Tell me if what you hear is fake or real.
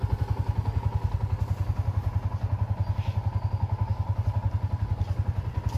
real